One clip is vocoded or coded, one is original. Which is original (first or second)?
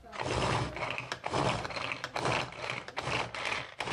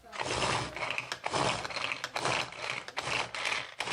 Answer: second